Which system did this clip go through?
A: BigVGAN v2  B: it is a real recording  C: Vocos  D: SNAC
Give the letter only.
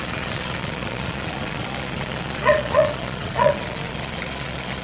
C